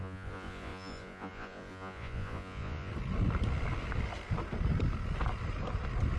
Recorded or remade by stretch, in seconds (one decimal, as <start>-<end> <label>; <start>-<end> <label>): 0.0-2.9 remade; 2.9-6.2 recorded